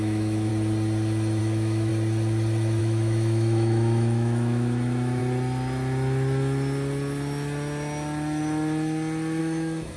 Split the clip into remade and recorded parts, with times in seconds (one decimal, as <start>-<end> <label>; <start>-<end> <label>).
0.0-0.5 remade; 0.5-1.4 recorded; 1.4-1.9 remade; 1.9-2.8 recorded; 2.8-5.2 remade; 5.2-9.4 recorded; 9.4-10.0 remade